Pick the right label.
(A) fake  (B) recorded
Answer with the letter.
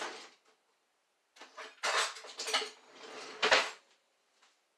B